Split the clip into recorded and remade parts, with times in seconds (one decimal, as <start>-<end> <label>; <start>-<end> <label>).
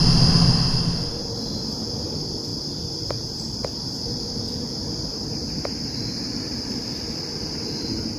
0.0-2.5 recorded; 2.5-4.0 remade; 4.0-5.1 recorded; 5.1-6.5 remade; 6.5-8.2 recorded